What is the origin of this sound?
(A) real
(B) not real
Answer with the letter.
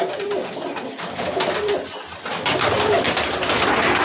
A